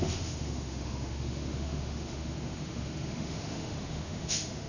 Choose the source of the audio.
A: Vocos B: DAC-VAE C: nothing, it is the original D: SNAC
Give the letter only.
B